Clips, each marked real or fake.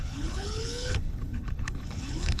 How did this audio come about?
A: fake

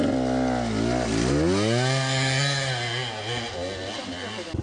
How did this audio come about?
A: real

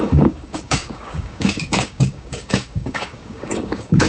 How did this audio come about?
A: fake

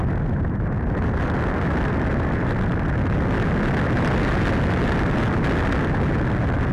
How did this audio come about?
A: real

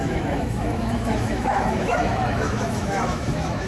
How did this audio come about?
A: fake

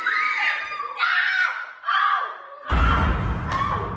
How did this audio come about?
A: real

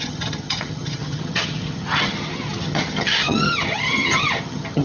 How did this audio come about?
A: fake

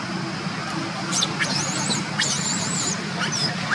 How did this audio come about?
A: real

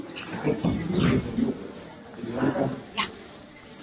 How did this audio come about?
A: fake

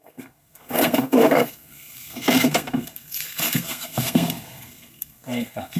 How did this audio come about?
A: fake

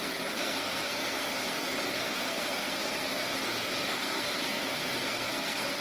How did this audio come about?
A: fake